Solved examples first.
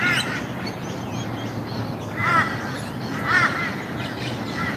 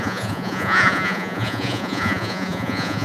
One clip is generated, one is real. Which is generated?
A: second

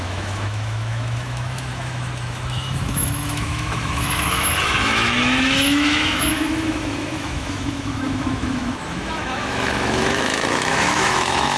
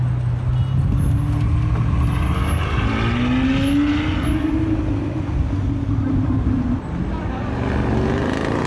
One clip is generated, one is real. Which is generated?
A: first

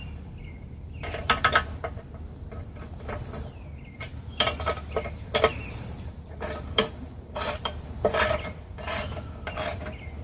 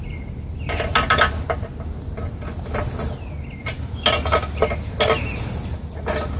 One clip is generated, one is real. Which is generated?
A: first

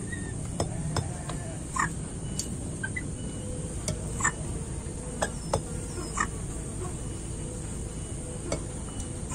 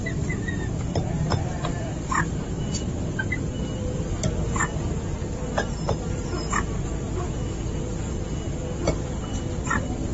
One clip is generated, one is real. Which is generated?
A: second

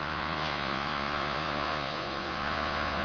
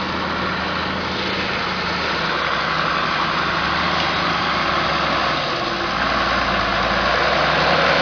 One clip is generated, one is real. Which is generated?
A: first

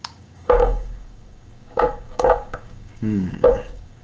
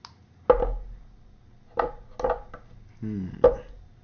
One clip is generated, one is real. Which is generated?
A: first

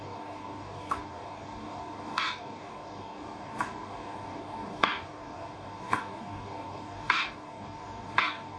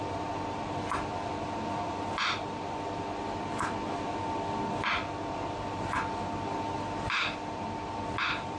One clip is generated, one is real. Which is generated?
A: first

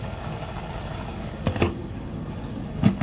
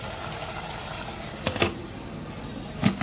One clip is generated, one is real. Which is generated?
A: first